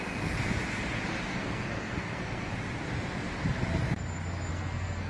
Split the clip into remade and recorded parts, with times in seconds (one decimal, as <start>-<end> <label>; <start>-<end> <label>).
0.0-1.3 recorded; 1.3-2.5 remade; 2.5-4.5 recorded; 4.5-5.1 remade